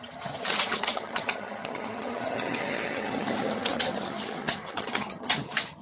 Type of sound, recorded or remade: remade